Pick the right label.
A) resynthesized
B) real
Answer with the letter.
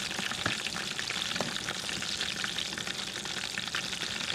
B